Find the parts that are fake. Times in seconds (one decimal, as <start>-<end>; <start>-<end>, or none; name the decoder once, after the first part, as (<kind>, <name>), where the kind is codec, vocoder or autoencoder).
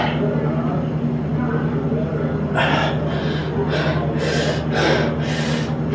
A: none